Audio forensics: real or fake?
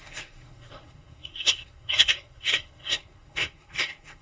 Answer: fake